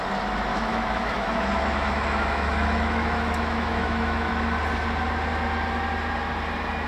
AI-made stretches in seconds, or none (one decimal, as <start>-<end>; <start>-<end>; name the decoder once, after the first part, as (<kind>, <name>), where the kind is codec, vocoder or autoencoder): 0.5-4.3 (autoencoder, DAC-VAE)